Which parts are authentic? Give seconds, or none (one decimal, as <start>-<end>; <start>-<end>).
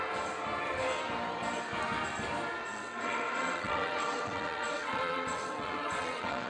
0.0-2.6